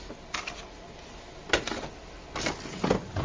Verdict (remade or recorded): recorded